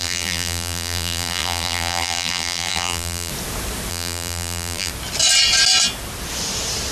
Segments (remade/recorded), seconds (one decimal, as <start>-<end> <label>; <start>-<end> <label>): 0.0-3.3 remade; 3.3-3.9 recorded; 3.9-4.9 remade; 4.9-6.9 recorded